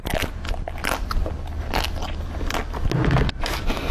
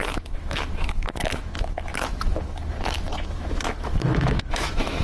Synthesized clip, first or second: second